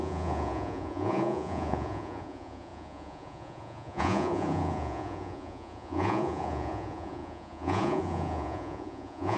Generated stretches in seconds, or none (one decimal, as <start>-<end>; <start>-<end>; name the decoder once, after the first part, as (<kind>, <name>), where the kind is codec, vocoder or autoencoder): 0.0-9.4 (vocoder, Vocos)